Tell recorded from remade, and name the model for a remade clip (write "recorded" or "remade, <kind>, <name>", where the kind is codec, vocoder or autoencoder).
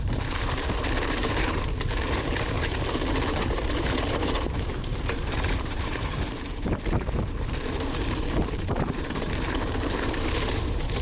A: remade, vocoder, BigVGAN v2